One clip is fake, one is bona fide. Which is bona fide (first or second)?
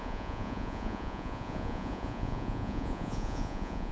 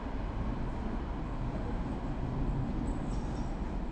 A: second